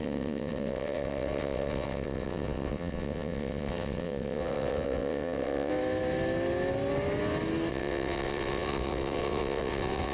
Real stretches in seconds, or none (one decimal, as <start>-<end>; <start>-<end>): 5.7-7.7